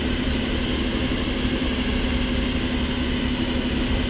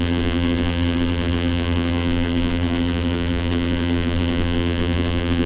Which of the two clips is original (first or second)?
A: first